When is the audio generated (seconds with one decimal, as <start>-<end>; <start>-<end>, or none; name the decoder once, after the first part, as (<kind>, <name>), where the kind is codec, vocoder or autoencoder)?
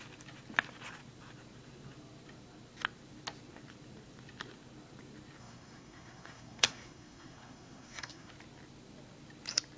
5.4-8.3 (codec, SNAC)